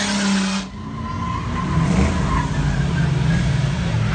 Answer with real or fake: real